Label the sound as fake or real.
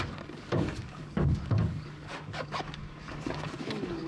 fake